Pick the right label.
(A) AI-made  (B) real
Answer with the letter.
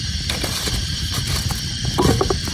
B